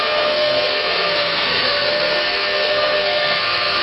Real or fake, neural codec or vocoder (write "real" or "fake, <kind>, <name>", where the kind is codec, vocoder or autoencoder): fake, codec, SNAC